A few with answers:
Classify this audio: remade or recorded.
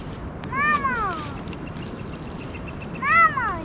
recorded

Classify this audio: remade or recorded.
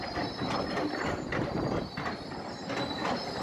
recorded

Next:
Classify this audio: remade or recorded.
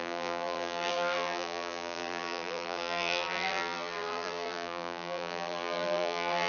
remade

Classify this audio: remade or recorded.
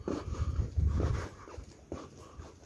recorded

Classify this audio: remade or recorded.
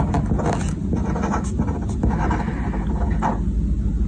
recorded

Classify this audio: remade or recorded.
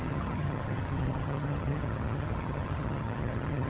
remade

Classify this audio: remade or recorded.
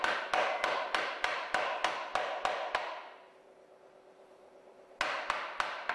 recorded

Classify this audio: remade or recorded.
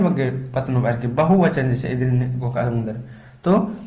recorded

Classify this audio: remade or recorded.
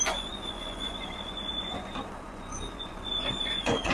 remade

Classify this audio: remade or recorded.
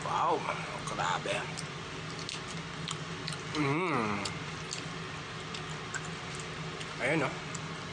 recorded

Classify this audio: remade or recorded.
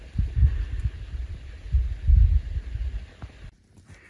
recorded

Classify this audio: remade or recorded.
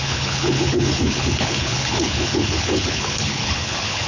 remade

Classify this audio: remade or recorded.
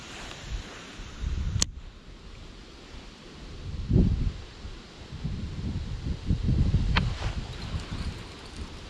recorded